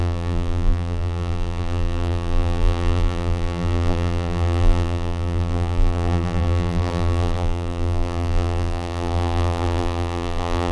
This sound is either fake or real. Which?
fake